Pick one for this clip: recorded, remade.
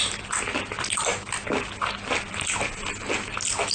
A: recorded